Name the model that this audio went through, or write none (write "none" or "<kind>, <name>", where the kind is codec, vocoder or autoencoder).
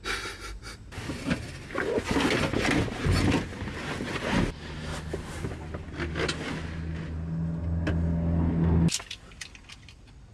none